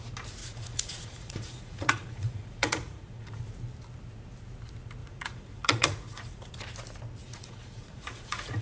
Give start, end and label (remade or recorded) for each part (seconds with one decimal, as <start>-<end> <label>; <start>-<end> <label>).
0.0-0.4 recorded; 0.4-3.4 remade; 3.4-5.0 recorded; 5.0-6.5 remade; 6.5-7.2 recorded; 7.2-8.6 remade